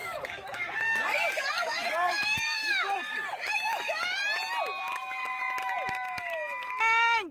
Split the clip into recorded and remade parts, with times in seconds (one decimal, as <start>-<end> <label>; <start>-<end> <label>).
0.0-4.2 remade; 4.2-4.8 recorded; 4.8-5.4 remade; 5.4-5.9 recorded; 5.9-7.3 remade